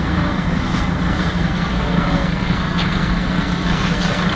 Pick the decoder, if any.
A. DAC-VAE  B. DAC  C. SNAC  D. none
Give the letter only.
C